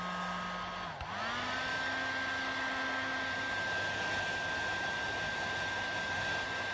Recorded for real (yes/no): yes